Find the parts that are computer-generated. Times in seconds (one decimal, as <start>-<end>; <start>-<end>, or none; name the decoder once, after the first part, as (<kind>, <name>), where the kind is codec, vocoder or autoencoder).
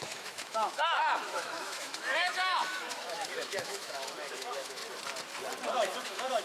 0.0-4.8 (autoencoder, DAC-VAE); 5.7-6.4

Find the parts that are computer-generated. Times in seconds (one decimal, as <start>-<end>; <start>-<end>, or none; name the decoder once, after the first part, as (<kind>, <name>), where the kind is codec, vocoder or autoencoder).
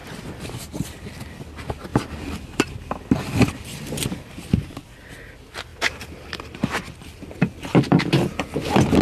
0.0-0.5 (vocoder, BigVGAN v2); 1.9-4.1; 5.7-8.4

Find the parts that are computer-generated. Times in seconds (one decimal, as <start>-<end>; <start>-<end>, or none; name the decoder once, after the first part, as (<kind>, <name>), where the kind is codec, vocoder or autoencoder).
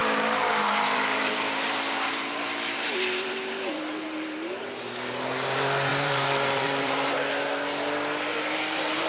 0.0-4.6 (vocoder, BigVGAN v2); 5.9-7.1; 8.3-9.1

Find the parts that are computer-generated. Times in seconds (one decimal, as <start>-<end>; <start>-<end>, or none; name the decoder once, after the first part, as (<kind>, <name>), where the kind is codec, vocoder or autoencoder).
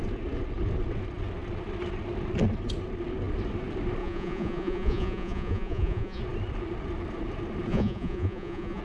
4.0-6.2 (vocoder, Vocos); 7.7-8.8